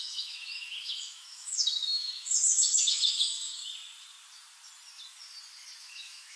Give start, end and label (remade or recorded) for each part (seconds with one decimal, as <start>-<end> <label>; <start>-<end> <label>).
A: 0.0-3.6 remade; 3.6-5.8 recorded; 5.8-6.4 remade